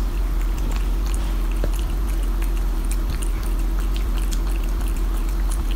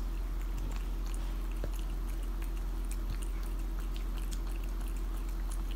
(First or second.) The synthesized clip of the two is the first